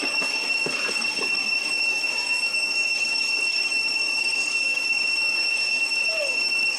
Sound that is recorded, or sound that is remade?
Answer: remade